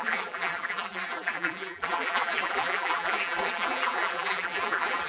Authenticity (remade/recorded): remade